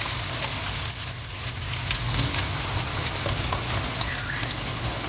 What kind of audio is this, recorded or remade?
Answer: recorded